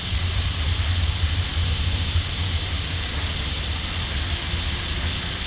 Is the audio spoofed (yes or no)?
no